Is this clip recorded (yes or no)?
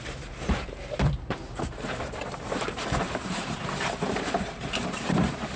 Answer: no